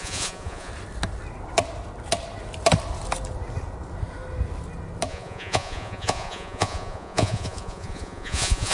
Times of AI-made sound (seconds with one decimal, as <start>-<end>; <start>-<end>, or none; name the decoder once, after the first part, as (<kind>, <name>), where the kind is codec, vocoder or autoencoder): 0.0-0.7 (vocoder, Vocos); 5.1-8.7